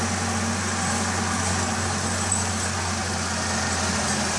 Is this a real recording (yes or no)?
yes